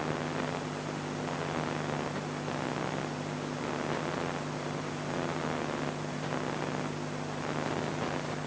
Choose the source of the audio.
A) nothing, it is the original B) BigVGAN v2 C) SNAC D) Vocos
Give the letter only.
A